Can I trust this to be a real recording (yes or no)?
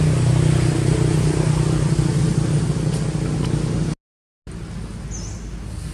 yes